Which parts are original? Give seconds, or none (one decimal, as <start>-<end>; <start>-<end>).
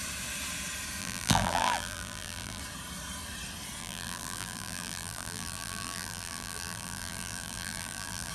0.0-1.0; 2.6-3.8